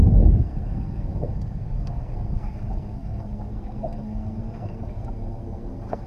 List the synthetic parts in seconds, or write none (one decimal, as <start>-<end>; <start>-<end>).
0.0-6.1